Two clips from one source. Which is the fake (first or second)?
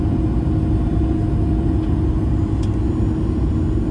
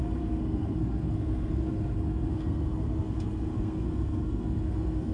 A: second